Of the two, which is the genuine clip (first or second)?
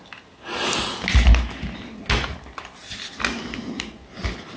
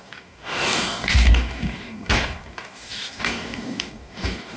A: first